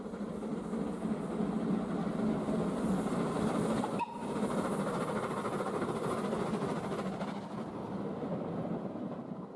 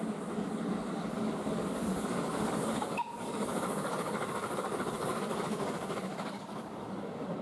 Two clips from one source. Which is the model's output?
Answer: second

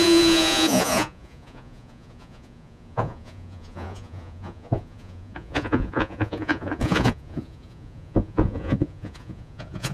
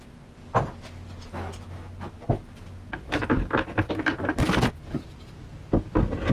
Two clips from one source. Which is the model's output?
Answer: first